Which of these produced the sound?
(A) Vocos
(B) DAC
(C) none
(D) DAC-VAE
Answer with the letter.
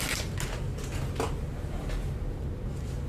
C